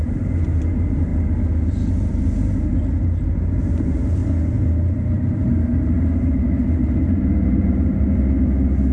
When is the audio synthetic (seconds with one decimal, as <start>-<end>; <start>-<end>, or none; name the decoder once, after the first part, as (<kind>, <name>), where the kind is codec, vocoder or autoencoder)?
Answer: 0.0-1.1 (vocoder, BigVGAN v2); 1.9-4.2; 4.8-8.9